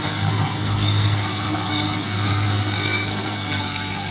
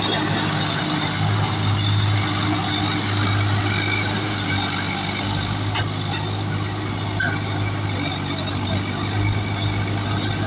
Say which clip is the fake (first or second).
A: first